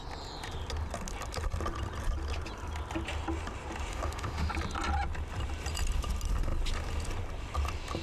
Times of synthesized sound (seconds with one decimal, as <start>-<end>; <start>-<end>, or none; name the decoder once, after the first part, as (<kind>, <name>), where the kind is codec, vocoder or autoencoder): 3.9-4.5 (autoencoder, DAC-VAE)